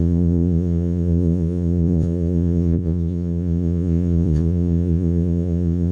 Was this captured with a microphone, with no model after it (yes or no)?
no